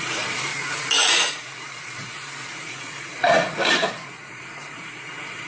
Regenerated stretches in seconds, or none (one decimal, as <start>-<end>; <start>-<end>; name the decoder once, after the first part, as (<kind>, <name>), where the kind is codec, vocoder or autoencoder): 0.0-0.5 (vocoder, Vocos); 1.1-5.5